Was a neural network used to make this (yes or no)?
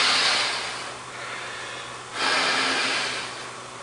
no